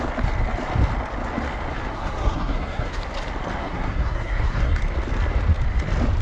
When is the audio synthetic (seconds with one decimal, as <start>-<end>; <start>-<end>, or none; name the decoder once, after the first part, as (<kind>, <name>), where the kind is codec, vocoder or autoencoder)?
1.9-3.0 (codec, SNAC); 3.6-4.8